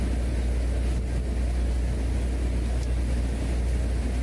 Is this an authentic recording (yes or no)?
yes